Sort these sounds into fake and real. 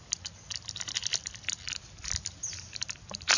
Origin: real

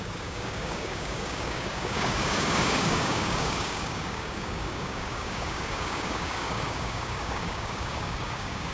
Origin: fake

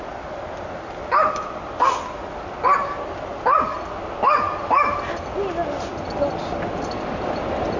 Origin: real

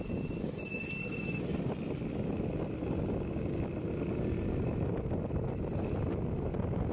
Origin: real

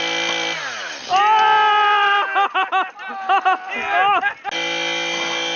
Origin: real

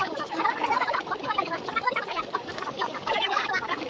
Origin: fake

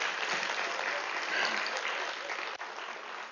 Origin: real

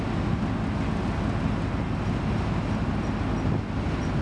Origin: real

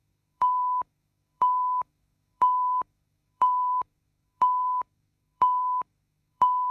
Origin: fake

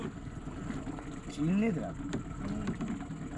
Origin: real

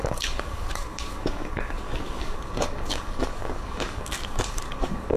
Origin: fake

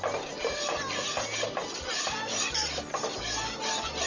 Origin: real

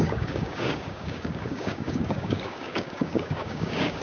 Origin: fake